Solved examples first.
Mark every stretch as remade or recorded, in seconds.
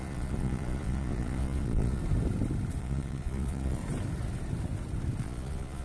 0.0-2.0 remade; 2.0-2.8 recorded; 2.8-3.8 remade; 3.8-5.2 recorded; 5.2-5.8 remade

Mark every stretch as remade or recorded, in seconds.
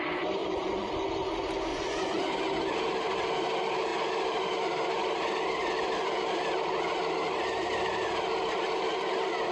0.0-0.4 recorded; 0.4-0.9 remade; 0.9-1.7 recorded; 1.7-2.2 remade; 2.2-9.5 recorded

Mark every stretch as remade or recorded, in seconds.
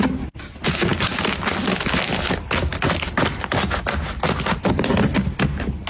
0.0-5.9 recorded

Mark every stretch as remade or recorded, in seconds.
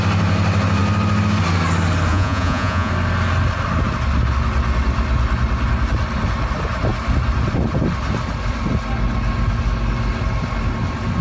0.0-2.1 recorded; 2.1-2.9 remade; 2.9-11.2 recorded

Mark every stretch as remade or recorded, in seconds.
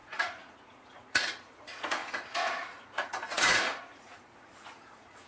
0.0-5.3 remade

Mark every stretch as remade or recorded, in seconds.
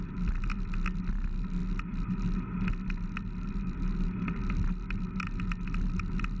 0.0-6.4 recorded